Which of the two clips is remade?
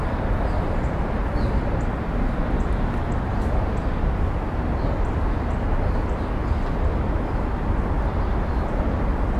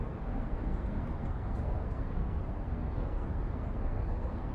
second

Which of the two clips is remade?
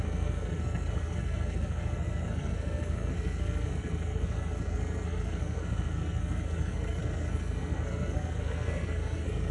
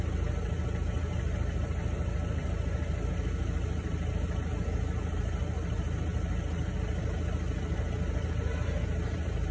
first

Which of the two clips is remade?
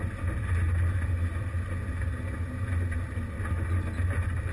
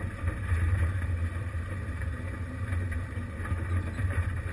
second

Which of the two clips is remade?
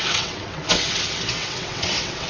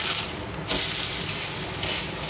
first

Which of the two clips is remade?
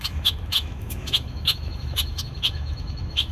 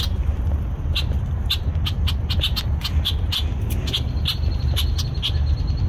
first